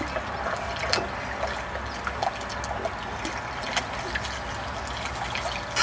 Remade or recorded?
recorded